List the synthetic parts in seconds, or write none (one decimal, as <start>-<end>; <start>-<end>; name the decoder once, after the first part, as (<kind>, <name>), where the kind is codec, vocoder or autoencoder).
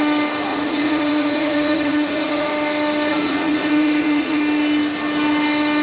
0.5-2.5 (vocoder, Vocos); 3.1-4.4